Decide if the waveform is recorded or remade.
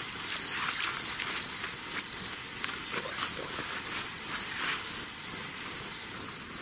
recorded